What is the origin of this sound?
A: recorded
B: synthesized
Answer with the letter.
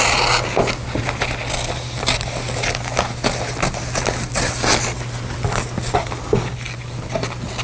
A